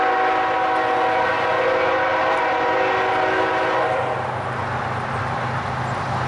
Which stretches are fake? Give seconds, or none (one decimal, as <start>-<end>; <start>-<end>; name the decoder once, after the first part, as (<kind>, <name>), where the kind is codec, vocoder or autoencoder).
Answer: none